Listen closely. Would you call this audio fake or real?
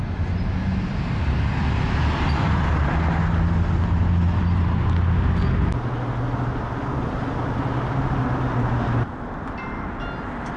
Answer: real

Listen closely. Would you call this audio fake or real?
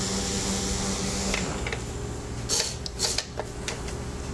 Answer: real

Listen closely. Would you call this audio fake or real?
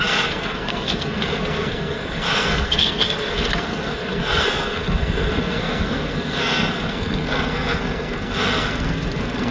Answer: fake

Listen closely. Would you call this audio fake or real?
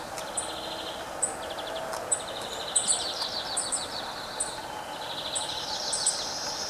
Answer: real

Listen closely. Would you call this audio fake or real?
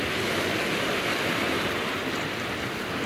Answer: real